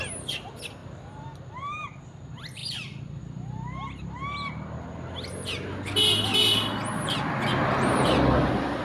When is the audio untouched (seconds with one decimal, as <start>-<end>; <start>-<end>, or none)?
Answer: 0.0-2.6; 3.2-8.8